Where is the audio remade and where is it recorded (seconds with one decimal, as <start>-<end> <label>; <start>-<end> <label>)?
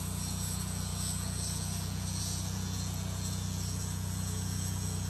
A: 0.0-5.1 remade